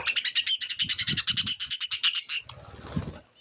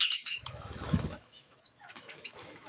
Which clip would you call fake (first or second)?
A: second